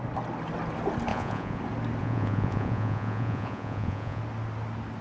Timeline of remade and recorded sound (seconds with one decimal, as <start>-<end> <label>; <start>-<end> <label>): 0.0-1.1 recorded; 1.1-1.6 remade; 1.6-2.0 recorded; 2.0-4.2 remade; 4.2-5.0 recorded